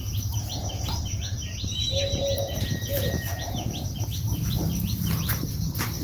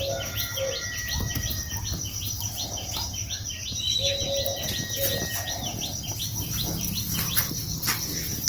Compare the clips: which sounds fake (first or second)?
first